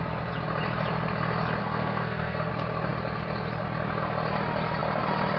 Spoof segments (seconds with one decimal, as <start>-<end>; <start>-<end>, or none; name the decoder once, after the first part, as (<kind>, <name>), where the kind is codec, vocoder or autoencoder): 1.6-2.5 (codec, SNAC)